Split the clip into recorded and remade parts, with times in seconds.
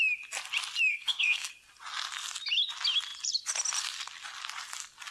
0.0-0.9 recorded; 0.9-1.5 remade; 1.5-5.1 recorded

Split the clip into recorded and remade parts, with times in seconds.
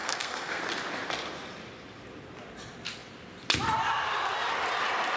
0.0-0.6 remade; 0.6-5.2 recorded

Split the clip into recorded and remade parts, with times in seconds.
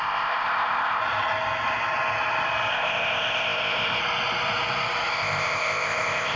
0.0-1.0 remade; 1.0-2.7 recorded; 2.7-4.0 remade; 4.0-5.1 recorded; 5.1-6.4 remade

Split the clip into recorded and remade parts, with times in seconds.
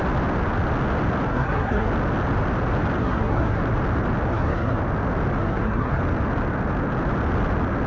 0.0-1.3 recorded; 1.3-1.9 remade; 1.9-3.0 recorded; 3.0-3.6 remade; 3.6-4.3 recorded; 4.3-4.8 remade; 4.8-5.4 recorded; 5.4-6.0 remade; 6.0-7.9 recorded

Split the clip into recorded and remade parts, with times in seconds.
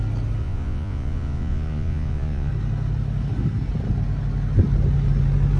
0.0-0.4 recorded; 0.4-2.5 remade; 2.5-5.6 recorded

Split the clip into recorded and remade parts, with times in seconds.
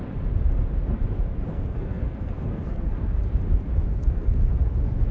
0.0-1.5 recorded; 1.5-3.2 remade; 3.2-3.9 recorded; 3.9-4.5 remade; 4.5-5.1 recorded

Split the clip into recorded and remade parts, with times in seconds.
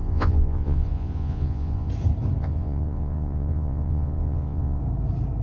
0.0-1.9 remade; 1.9-2.4 recorded; 2.4-4.8 remade; 4.8-5.4 recorded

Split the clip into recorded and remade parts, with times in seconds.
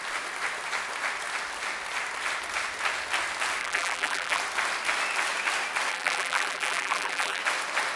0.0-3.6 recorded; 3.6-4.4 remade; 4.4-5.9 recorded; 5.9-7.4 remade; 7.4-8.0 recorded